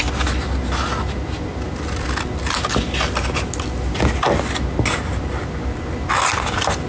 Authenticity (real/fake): real